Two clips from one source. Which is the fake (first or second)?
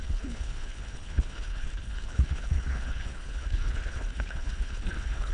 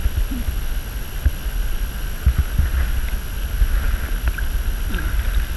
first